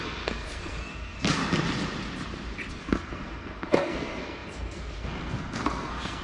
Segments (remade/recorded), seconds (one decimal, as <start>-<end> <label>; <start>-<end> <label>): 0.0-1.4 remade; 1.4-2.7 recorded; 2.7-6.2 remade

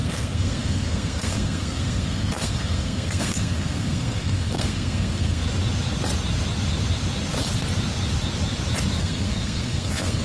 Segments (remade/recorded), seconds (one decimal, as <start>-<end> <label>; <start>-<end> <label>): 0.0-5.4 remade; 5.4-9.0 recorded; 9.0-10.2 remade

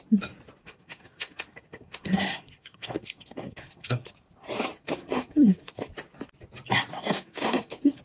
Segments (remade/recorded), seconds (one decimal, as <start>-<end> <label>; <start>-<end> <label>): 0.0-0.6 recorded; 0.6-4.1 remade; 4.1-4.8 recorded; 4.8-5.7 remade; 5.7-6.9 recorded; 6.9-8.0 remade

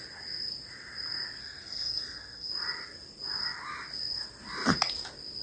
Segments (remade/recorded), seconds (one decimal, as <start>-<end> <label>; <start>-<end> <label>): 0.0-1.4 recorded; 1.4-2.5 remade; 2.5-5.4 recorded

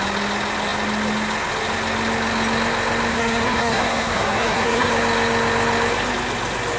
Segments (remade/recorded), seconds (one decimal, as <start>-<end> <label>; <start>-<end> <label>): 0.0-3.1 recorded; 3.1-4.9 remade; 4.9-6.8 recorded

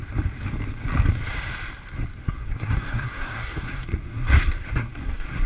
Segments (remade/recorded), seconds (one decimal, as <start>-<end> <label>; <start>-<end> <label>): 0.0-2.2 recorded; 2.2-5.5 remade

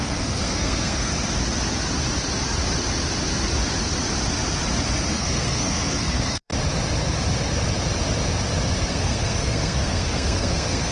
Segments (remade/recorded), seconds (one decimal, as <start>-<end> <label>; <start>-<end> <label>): 0.0-1.1 remade; 1.1-5.1 recorded; 5.1-6.5 remade; 6.5-8.9 recorded; 8.9-10.9 remade